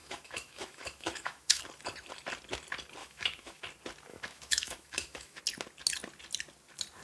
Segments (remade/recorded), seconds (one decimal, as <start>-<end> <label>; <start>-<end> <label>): 0.0-1.6 remade; 1.6-3.0 recorded; 3.0-3.6 remade; 3.6-4.1 recorded; 4.1-5.4 remade; 5.4-7.0 recorded